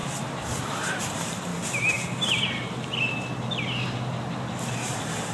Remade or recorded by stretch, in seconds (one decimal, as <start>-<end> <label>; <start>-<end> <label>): 0.0-0.6 recorded; 0.6-1.5 remade; 1.5-4.7 recorded; 4.7-5.3 remade